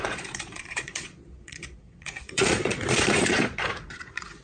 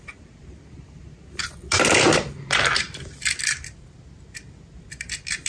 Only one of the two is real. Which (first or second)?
second